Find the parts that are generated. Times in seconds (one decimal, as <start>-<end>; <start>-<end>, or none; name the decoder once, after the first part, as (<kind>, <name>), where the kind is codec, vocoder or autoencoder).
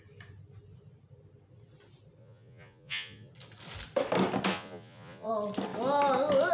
2.2-3.3 (vocoder, Vocos); 4.5-5.3